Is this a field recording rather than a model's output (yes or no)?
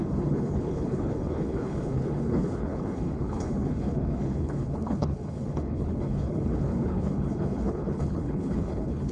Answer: no